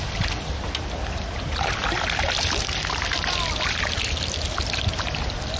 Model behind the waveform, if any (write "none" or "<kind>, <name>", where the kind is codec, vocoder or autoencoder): vocoder, BigVGAN v2